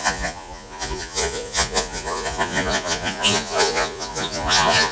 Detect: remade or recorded remade